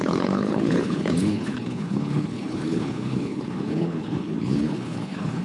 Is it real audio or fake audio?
fake